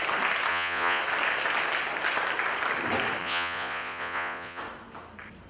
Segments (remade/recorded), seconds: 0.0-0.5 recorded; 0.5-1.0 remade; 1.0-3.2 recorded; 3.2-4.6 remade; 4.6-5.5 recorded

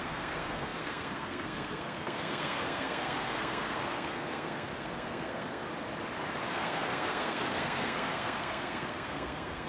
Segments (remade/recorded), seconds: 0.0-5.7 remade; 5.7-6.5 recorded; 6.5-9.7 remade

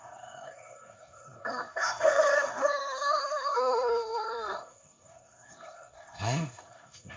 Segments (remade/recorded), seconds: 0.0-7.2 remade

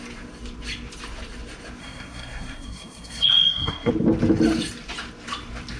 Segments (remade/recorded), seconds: 0.0-1.8 recorded; 1.8-3.9 remade; 3.9-5.8 recorded

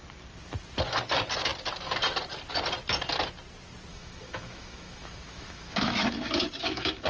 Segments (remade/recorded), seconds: 0.0-3.9 recorded; 3.9-7.1 remade